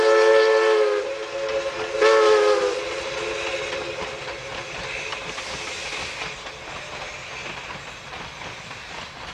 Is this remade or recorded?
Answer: recorded